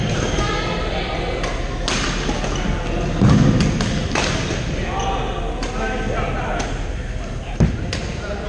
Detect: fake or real real